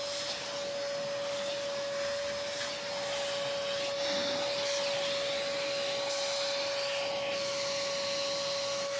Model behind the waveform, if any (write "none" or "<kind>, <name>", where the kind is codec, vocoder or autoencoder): none